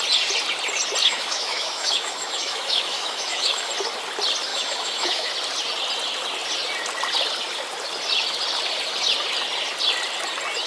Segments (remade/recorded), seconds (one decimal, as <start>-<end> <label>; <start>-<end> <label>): 0.0-1.0 recorded; 1.0-3.7 remade; 3.7-4.5 recorded; 4.5-5.3 remade; 5.3-10.7 recorded